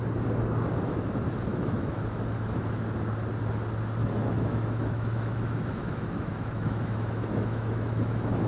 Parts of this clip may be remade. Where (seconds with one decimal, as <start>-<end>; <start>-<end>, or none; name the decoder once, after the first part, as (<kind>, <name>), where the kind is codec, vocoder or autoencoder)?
1.5-2.8 (autoencoder, DAC-VAE); 4.0-8.5